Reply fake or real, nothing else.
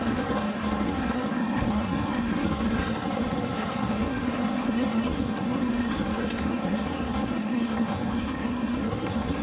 fake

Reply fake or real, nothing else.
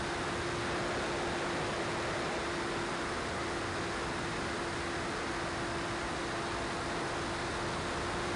real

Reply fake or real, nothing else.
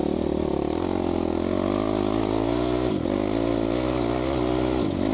real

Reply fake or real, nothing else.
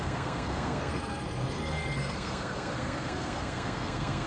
fake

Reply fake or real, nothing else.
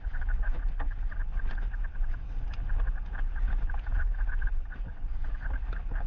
real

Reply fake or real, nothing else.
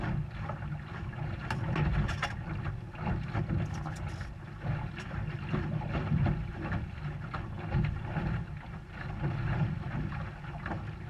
real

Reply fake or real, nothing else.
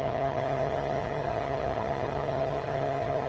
fake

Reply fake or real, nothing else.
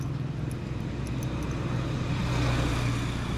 real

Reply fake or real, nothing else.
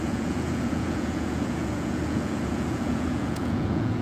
fake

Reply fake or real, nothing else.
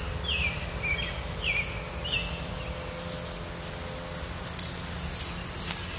real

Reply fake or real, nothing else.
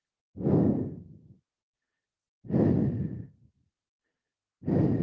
real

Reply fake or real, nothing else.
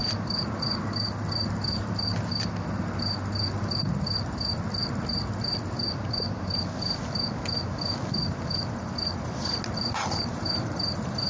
real